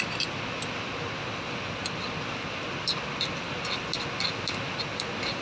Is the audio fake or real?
real